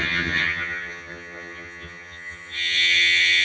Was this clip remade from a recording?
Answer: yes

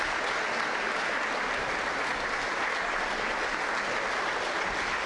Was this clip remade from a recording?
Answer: no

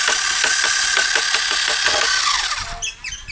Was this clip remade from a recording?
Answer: no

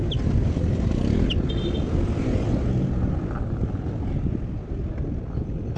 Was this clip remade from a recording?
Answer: no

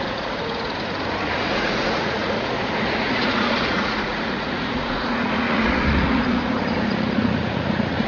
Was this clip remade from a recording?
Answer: yes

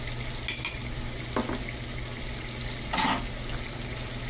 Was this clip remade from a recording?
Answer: no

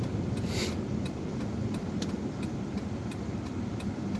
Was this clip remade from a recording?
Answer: yes